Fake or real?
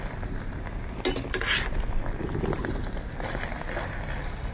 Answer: real